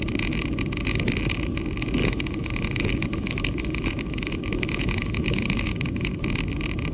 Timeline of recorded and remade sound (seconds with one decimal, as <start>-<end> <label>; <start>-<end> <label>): 0.0-2.0 recorded; 2.0-6.1 remade; 6.1-6.9 recorded